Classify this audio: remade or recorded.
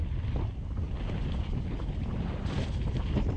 recorded